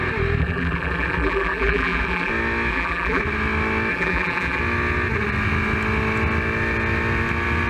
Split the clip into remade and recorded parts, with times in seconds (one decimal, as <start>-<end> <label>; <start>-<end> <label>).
0.0-0.4 recorded; 0.4-2.3 remade; 2.3-2.7 recorded; 2.7-3.2 remade; 3.2-3.9 recorded; 3.9-4.6 remade; 4.6-7.7 recorded